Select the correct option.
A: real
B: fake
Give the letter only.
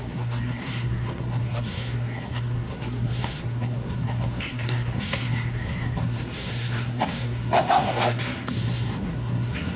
B